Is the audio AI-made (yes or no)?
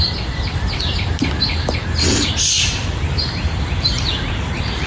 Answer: no